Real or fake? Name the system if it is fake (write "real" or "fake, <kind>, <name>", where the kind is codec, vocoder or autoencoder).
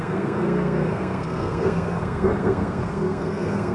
fake, codec, SNAC